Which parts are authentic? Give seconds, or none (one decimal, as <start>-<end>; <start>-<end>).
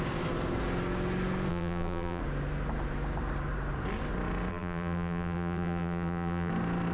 0.0-1.5; 2.2-4.5; 6.5-6.9